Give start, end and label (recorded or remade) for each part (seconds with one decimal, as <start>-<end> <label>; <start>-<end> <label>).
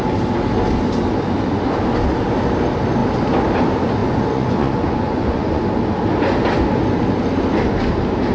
0.0-4.0 recorded; 4.0-5.6 remade; 5.6-8.3 recorded